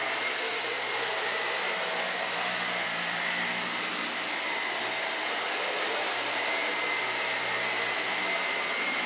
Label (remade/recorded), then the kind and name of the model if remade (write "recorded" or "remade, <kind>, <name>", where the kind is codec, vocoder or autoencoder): recorded